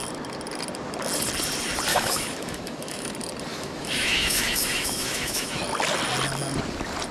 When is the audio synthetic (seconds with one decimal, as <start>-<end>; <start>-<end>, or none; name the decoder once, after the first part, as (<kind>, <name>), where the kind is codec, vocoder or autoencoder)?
1.9-3.1 (autoencoder, DAC-VAE); 3.5-5.6